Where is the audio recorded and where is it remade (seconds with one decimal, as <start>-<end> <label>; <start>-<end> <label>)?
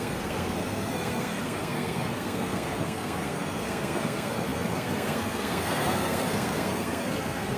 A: 0.0-7.6 remade